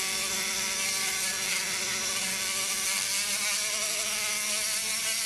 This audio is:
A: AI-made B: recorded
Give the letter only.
B